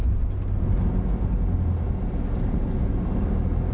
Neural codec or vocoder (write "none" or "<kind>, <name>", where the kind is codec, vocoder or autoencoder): none